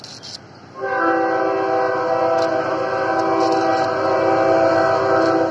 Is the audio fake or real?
real